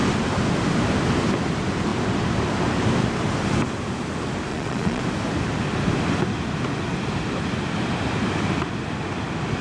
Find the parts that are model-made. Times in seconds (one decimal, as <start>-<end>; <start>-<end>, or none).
4.5-5.0